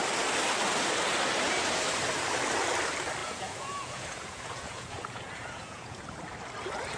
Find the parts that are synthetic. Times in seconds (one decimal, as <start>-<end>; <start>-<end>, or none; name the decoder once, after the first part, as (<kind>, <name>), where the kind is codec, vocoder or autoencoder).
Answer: 3.2-6.0 (vocoder, Vocos)